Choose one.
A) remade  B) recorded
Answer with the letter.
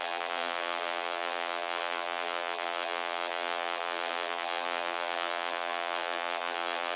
A